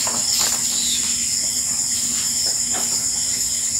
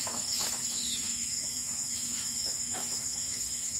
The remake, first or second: second